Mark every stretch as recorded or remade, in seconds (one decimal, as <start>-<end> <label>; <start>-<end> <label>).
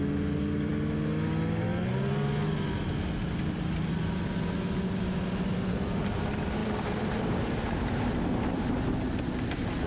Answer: 0.0-6.6 recorded; 6.6-8.7 remade; 8.7-9.9 recorded